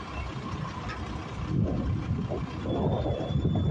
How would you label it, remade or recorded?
recorded